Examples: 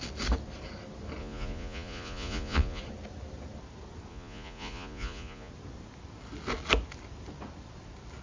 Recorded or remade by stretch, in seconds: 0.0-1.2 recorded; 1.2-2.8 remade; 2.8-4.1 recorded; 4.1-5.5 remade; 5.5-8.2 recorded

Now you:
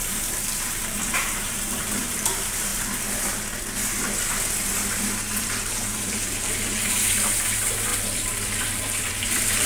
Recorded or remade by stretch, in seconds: 0.0-2.7 remade; 2.7-5.4 recorded; 5.4-9.7 remade

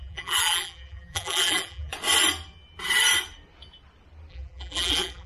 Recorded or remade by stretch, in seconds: 0.0-1.9 remade; 1.9-4.3 recorded; 4.3-5.3 remade

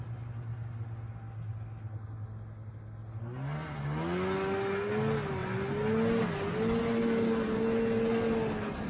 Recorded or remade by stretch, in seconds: 0.0-8.9 recorded

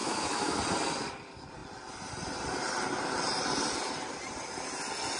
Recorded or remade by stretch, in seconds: 0.0-0.6 remade; 0.6-5.2 recorded

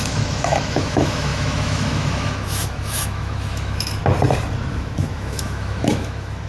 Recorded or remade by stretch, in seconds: 0.0-4.0 remade; 4.0-4.7 recorded; 4.7-6.5 remade

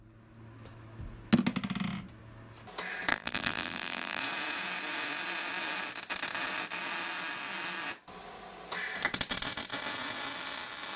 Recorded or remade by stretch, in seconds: 0.0-3.1 recorded; 3.1-4.2 remade; 4.2-11.0 recorded

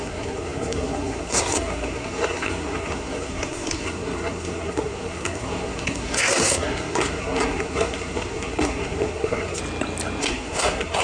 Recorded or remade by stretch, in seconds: 0.0-9.6 remade; 9.6-10.2 recorded; 10.2-11.0 remade